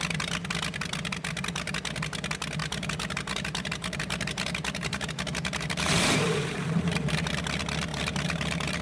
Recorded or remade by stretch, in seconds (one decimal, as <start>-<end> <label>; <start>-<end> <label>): 0.0-2.6 recorded; 2.6-7.3 remade; 7.3-7.9 recorded; 7.9-8.8 remade